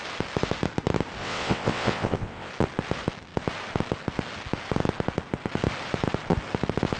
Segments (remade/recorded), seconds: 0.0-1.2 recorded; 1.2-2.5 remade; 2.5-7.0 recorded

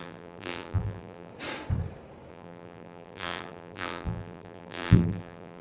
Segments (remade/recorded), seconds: 0.0-1.3 remade; 1.3-2.3 recorded; 2.3-5.6 remade

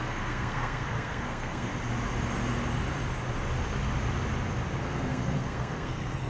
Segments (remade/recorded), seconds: 0.0-1.7 remade; 1.7-4.8 recorded; 4.8-6.3 remade

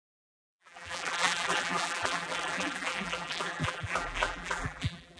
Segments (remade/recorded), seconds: 0.0-5.2 remade